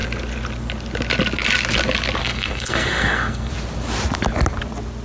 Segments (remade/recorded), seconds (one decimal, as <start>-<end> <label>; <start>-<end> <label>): 0.0-2.2 recorded; 2.2-3.5 remade; 3.5-5.0 recorded